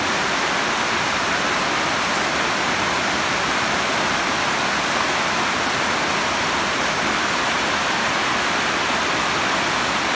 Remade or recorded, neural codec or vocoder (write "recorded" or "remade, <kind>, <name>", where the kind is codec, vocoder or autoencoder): recorded